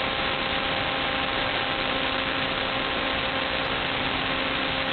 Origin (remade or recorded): recorded